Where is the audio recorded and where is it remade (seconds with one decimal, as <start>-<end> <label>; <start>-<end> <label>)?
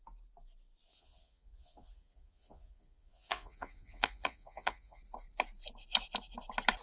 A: 0.0-0.9 recorded; 0.9-5.0 remade; 5.0-6.8 recorded